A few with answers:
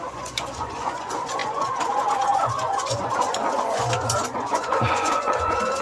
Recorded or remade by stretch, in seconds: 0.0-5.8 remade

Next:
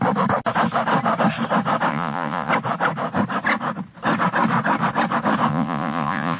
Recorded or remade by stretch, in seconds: 0.0-1.9 recorded; 1.9-2.5 remade; 2.5-5.5 recorded; 5.5-6.4 remade

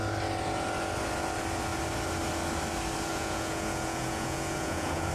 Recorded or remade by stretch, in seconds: 0.0-3.1 recorded; 3.1-5.1 remade

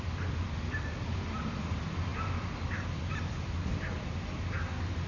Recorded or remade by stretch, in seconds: 0.0-5.1 recorded